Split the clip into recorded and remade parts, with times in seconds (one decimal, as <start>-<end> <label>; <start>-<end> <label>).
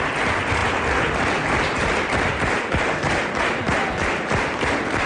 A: 0.0-5.1 recorded